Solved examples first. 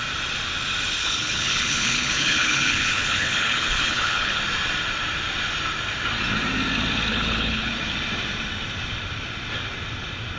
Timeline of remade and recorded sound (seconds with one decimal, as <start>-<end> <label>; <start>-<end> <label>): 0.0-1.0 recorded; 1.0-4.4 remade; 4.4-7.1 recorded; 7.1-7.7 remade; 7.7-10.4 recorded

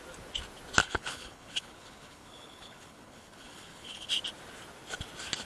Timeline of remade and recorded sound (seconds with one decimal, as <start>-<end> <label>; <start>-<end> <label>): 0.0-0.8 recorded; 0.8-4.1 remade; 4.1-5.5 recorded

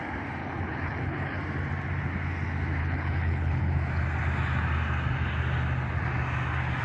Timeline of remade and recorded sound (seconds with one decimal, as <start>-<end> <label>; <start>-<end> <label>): 0.0-0.4 recorded; 0.4-1.4 remade; 1.4-2.8 recorded; 2.8-3.7 remade; 3.7-6.8 recorded